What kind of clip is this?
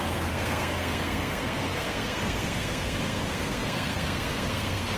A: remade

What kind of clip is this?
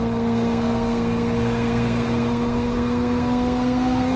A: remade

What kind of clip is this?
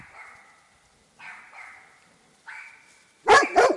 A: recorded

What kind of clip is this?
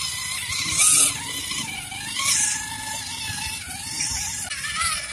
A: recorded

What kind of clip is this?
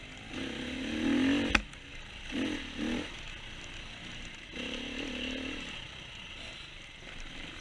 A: recorded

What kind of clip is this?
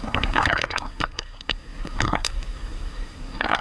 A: remade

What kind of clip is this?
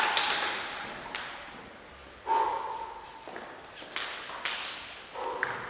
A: recorded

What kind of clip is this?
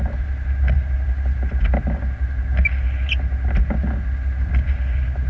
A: recorded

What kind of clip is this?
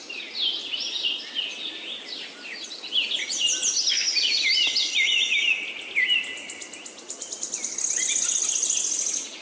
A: recorded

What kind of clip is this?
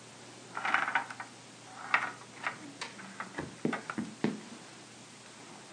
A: recorded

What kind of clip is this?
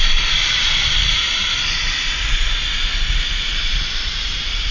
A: recorded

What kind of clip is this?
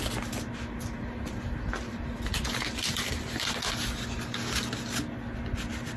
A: recorded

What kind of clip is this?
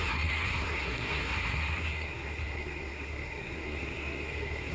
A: remade